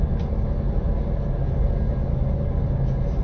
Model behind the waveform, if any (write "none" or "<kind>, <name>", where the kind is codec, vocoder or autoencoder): none